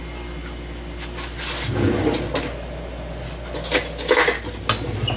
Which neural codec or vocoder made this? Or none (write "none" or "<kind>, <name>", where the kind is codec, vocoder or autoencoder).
none